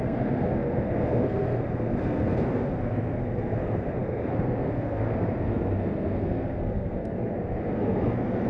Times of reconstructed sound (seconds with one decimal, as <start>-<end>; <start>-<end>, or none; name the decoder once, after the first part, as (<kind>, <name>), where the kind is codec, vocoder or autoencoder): 0.0-8.5 (codec, SNAC)